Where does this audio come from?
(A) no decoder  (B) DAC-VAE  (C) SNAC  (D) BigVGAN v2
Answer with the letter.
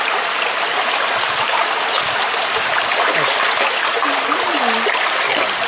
A